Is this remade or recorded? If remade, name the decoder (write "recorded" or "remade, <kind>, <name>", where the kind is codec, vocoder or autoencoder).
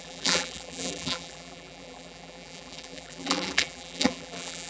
remade, vocoder, BigVGAN v2